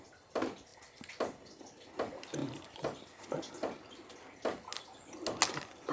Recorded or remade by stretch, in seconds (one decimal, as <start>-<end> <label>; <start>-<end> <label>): 0.0-5.9 recorded